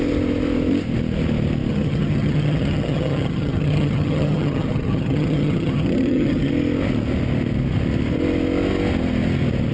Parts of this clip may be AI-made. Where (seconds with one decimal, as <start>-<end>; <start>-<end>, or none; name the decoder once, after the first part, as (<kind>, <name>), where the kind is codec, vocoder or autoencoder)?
1.7-6.5 (vocoder, HiFi-GAN)